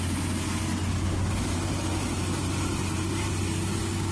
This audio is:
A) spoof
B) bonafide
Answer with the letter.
B